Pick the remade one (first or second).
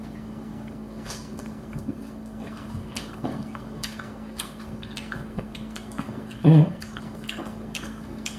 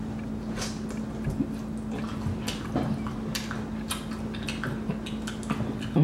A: first